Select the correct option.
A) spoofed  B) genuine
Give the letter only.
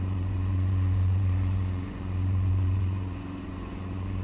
A